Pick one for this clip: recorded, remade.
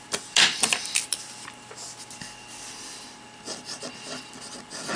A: recorded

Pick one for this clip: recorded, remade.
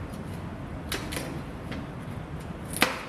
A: recorded